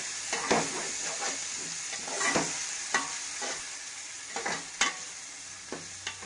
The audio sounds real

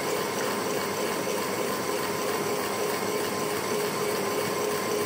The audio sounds real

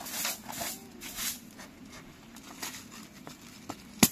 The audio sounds real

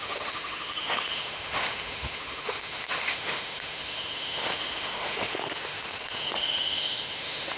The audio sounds fake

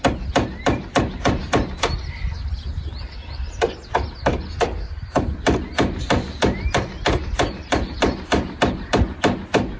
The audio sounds real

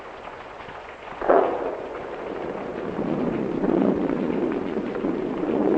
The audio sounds fake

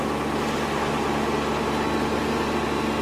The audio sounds real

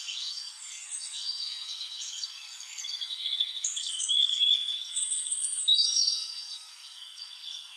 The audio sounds fake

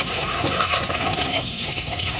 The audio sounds fake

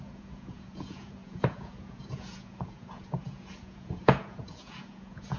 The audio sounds fake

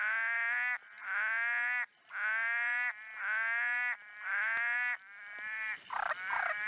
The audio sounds real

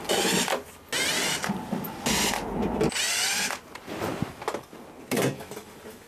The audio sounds real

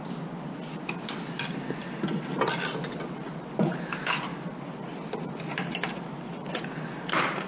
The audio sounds real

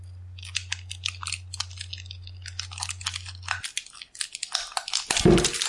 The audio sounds real